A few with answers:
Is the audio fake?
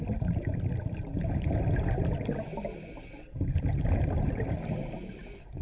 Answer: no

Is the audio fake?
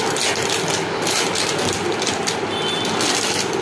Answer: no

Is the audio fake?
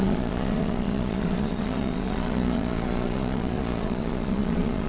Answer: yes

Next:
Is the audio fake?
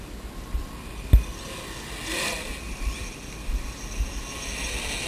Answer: no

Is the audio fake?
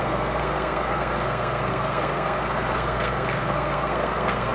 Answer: yes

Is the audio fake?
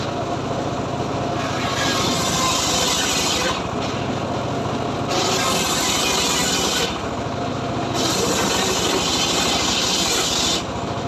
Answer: no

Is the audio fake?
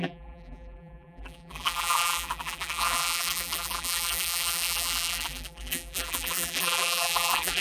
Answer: yes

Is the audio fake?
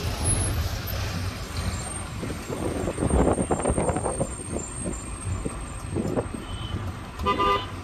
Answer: no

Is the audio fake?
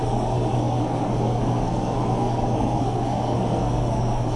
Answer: yes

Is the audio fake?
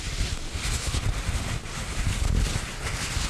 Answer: no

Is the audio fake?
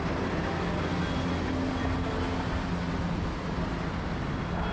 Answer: no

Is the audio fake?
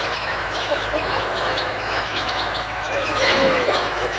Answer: yes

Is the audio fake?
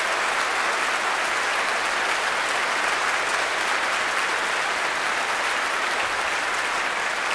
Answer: no